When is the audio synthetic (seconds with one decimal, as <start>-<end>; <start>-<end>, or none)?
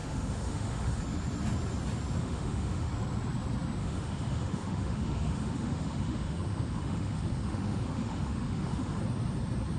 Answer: 0.0-1.0; 2.2-2.9; 3.8-9.0